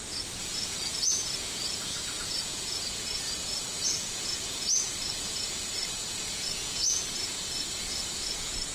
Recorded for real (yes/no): no